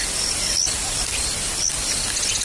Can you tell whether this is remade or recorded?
recorded